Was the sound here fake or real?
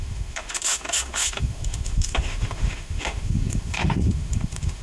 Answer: fake